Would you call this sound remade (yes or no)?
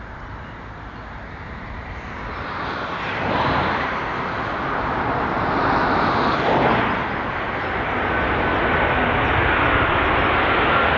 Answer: no